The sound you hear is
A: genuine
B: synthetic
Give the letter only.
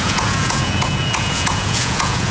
B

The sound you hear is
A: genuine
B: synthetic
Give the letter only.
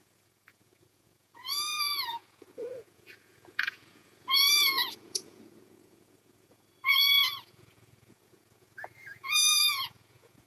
B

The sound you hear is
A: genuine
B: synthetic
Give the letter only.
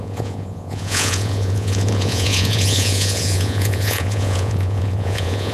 B